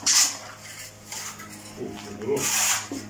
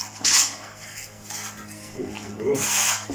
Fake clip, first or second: second